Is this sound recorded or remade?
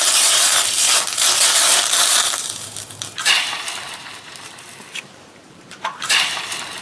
remade